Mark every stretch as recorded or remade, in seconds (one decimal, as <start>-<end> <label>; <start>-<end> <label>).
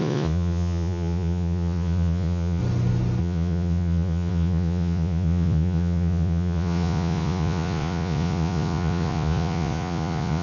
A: 0.0-2.6 remade; 2.6-3.2 recorded; 3.2-10.4 remade